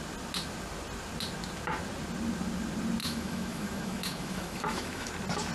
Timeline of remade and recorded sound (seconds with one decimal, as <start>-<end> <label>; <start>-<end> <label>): 0.0-3.0 recorded; 3.0-5.1 remade; 5.1-5.5 recorded